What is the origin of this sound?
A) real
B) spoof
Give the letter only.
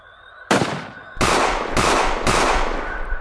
A